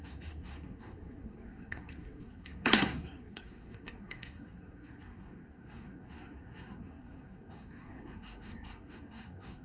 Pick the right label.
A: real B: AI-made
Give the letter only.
B